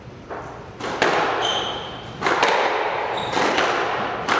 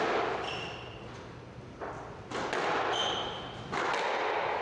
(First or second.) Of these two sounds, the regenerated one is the first